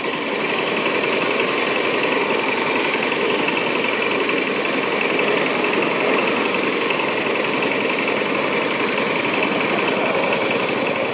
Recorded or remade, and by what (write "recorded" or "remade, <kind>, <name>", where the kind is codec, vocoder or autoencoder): recorded